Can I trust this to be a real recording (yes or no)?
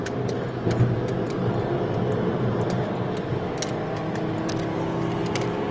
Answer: yes